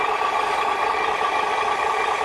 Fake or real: real